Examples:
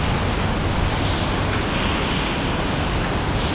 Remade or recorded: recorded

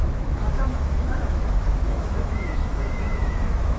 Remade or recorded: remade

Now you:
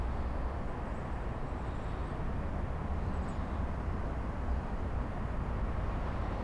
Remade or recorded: recorded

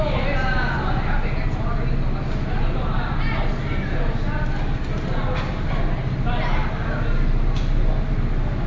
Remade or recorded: recorded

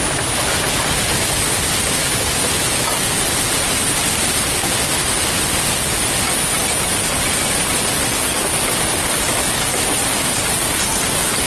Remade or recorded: recorded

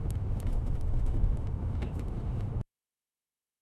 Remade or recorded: remade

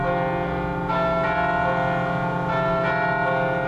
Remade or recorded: recorded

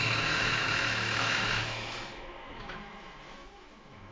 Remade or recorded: remade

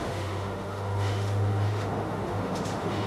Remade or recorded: remade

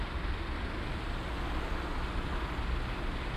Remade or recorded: recorded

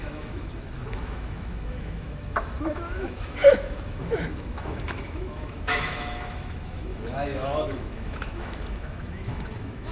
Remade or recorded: remade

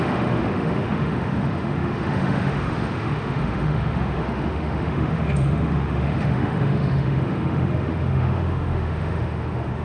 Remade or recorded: remade